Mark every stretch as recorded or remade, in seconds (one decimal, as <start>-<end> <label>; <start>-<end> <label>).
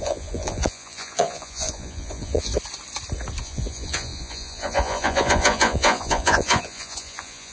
0.0-2.5 remade; 2.5-3.4 recorded; 3.4-7.5 remade